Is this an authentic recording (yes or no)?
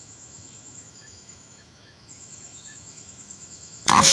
no